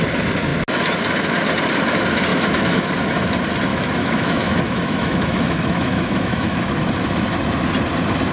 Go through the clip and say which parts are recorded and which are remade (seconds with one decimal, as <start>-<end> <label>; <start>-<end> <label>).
0.0-2.3 recorded; 2.3-2.9 remade; 2.9-3.7 recorded; 3.7-6.7 remade; 6.7-8.3 recorded